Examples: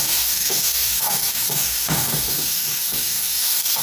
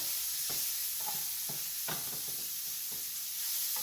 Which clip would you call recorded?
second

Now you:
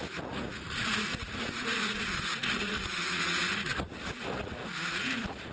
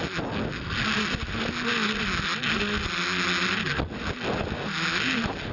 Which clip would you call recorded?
second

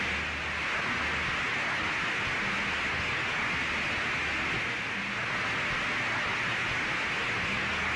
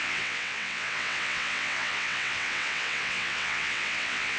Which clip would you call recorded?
first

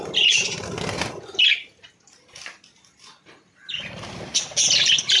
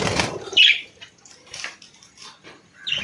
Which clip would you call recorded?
first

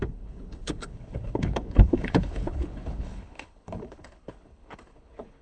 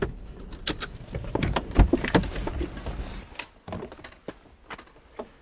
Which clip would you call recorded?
second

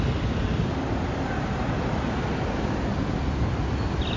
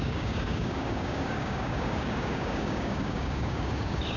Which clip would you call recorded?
first